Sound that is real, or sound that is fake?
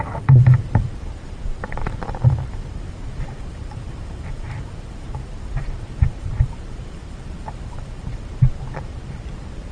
fake